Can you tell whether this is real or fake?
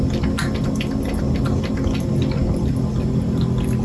real